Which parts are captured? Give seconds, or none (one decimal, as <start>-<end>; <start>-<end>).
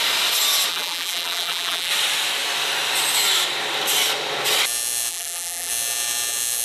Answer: 0.0-0.7; 1.9-5.1; 5.7-6.6